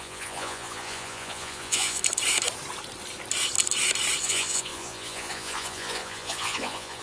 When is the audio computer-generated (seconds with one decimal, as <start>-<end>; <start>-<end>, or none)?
0.0-2.0; 4.2-7.0

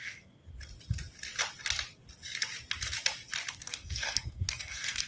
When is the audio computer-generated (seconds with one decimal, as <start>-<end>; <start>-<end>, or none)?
0.0-0.4; 3.5-5.1